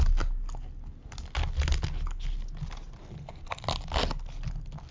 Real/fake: real